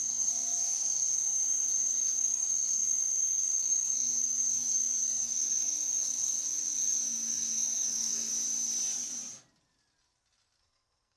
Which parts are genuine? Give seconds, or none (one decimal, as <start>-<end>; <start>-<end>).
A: 8.3-10.6